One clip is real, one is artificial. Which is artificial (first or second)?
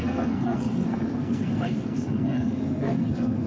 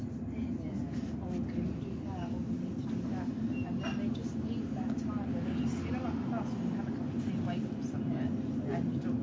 first